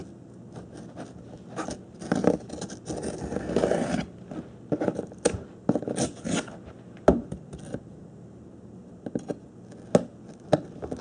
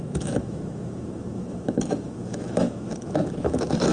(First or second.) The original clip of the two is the first